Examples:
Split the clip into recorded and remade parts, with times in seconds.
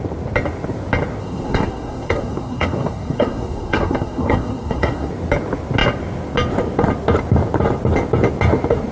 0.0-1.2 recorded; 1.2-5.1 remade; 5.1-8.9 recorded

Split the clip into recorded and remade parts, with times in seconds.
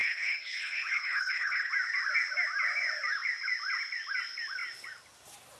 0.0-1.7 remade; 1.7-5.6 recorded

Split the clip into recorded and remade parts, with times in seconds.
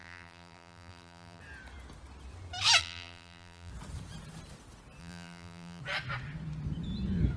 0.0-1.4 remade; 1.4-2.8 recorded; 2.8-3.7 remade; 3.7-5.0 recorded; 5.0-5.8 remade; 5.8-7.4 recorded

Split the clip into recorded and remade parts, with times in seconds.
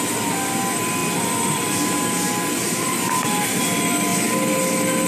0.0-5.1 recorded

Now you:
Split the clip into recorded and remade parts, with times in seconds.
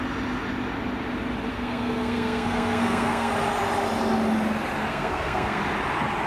0.0-1.5 recorded; 1.5-3.3 remade; 3.3-4.9 recorded; 4.9-5.6 remade; 5.6-6.3 recorded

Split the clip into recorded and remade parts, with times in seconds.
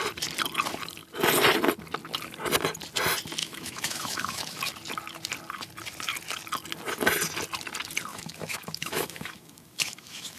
0.0-3.4 recorded; 3.4-4.6 remade; 4.6-8.1 recorded; 8.1-10.4 remade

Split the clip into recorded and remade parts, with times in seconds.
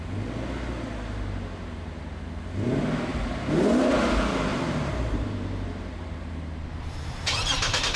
0.0-4.5 recorded; 4.5-5.9 remade; 5.9-8.0 recorded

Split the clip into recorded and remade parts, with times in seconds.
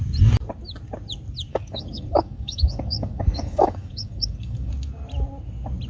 0.0-1.5 recorded; 1.5-4.7 remade; 4.7-5.9 recorded